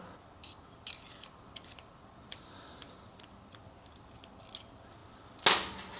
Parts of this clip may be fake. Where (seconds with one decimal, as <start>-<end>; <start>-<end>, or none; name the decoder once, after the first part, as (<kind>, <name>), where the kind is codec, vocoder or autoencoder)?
none